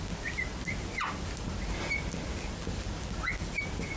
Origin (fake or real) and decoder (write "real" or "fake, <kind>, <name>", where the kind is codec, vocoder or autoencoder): real